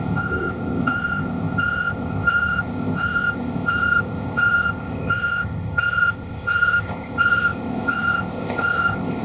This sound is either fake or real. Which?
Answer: fake